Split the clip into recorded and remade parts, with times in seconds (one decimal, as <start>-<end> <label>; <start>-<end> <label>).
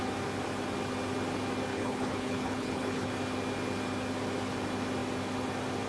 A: 0.0-1.7 recorded; 1.7-3.1 remade; 3.1-5.9 recorded